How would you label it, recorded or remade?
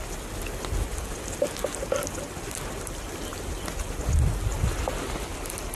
recorded